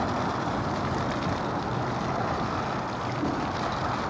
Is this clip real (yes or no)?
yes